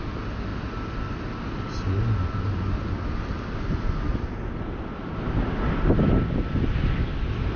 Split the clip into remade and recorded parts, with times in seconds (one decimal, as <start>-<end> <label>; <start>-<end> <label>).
0.0-7.6 recorded